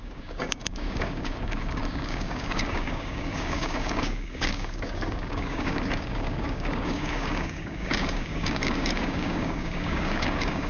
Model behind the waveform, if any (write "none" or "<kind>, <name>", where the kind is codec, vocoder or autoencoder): codec, DAC